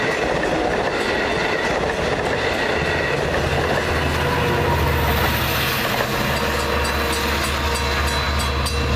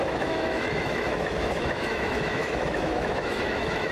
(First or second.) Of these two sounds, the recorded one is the first